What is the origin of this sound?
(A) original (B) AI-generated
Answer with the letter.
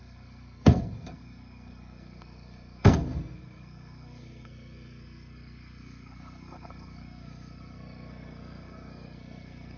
B